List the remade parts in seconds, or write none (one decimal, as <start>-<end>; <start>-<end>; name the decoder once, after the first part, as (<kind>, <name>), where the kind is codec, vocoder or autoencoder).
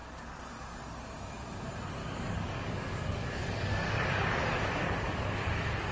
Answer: 2.0-5.5 (codec, DAC)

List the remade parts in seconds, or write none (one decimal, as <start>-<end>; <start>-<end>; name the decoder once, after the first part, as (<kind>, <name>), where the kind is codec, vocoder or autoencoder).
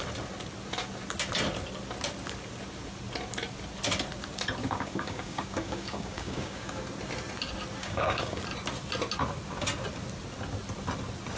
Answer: 4.6-6.8 (codec, DAC); 7.8-8.4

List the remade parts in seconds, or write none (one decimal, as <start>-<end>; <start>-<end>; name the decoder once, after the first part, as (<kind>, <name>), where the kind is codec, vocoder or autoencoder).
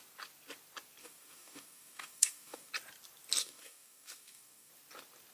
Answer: 1.0-2.7 (codec, DAC); 3.4-4.7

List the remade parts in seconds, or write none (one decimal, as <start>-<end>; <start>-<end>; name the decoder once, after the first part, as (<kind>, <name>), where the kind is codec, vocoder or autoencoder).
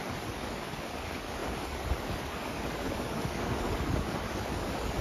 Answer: 0.0-5.0 (codec, DAC)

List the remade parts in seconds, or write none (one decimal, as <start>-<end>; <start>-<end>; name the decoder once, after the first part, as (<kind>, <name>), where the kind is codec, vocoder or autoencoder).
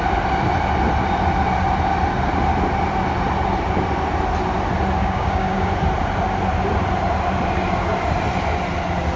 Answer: 5.0-5.7 (codec, DAC)